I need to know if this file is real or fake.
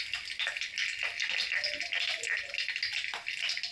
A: real